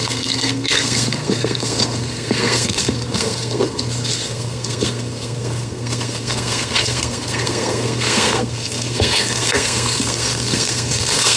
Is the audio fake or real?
fake